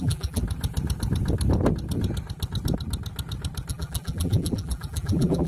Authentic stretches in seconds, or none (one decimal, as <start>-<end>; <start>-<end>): 0.4-3.7